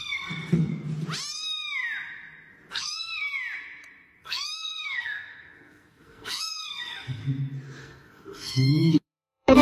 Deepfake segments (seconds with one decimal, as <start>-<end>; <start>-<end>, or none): 0.0-0.7; 2.7-3.3; 4.2-7.2; 7.8-9.6